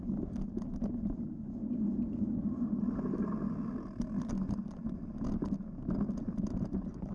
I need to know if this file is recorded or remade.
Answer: recorded